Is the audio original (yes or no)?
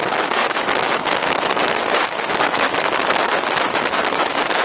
no